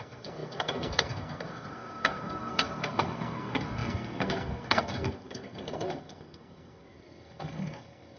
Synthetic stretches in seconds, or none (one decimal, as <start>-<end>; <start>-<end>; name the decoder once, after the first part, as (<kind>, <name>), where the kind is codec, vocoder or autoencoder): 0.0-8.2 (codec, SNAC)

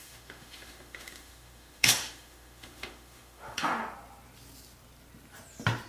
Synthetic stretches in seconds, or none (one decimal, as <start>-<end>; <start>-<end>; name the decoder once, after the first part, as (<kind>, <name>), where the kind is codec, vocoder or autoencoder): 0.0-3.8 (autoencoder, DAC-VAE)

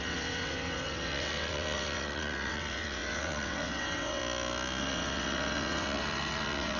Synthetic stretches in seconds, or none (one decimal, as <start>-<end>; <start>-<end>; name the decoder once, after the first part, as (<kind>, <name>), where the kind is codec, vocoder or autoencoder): 0.0-4.2 (vocoder, WaveNeXt); 4.8-6.8